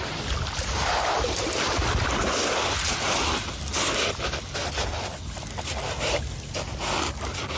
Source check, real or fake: real